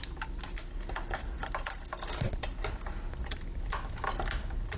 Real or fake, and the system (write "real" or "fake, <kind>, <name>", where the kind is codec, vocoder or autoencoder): real